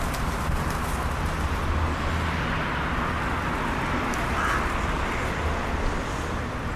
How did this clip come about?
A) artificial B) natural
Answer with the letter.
B